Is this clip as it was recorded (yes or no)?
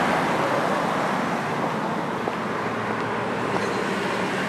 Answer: yes